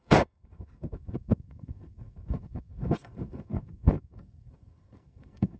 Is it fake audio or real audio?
fake